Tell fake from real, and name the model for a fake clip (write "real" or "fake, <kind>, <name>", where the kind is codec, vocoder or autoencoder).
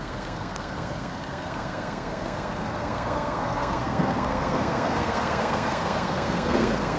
fake, codec, SNAC